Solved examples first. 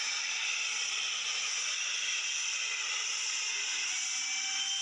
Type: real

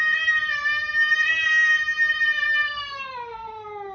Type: real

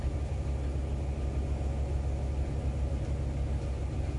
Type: real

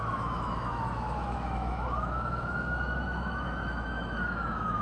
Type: fake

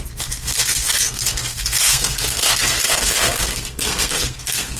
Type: fake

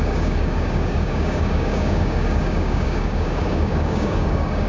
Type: fake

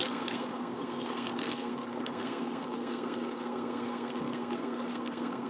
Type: fake